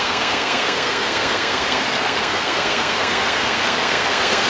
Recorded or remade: remade